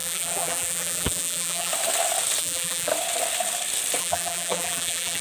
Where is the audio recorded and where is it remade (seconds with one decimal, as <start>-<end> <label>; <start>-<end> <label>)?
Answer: 0.0-1.7 remade; 1.7-2.4 recorded; 2.4-2.9 remade; 2.9-4.0 recorded; 4.0-5.2 remade